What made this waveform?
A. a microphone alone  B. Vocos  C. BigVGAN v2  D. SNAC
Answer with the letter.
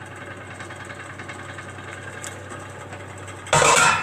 A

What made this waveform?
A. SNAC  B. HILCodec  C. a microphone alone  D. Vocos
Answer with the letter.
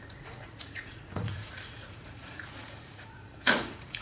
D